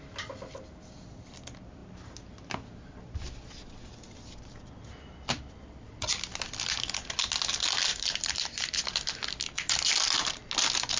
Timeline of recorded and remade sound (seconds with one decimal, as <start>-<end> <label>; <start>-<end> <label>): 0.0-7.9 recorded; 7.9-8.8 remade; 8.8-11.0 recorded